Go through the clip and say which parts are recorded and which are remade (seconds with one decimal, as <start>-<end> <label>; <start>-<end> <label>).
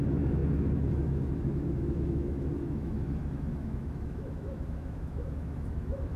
0.0-6.2 remade